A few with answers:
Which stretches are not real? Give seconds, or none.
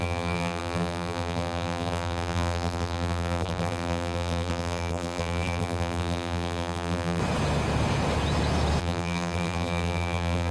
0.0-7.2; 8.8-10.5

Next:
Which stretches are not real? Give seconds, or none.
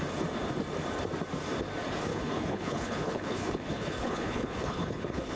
2.1-5.4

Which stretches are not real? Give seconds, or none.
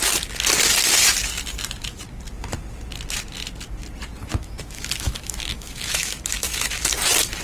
4.3-6.9